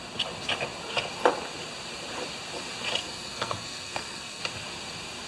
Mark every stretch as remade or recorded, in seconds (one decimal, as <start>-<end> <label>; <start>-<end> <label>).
0.0-3.0 recorded; 3.0-4.4 remade; 4.4-5.3 recorded